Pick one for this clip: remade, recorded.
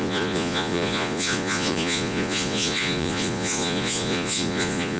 remade